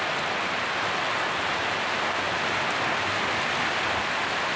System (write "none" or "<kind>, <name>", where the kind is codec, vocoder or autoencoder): none